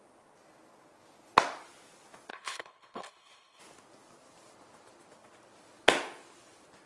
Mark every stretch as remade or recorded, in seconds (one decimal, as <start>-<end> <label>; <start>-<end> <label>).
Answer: 0.0-2.3 recorded; 2.3-3.6 remade; 3.6-6.9 recorded